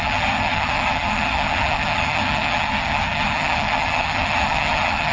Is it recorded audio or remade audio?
remade